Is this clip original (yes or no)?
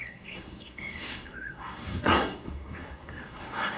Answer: no